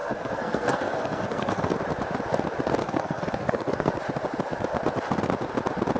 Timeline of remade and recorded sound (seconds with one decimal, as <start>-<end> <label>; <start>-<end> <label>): 0.0-1.8 remade; 1.8-2.8 recorded; 2.8-3.9 remade; 3.9-6.0 recorded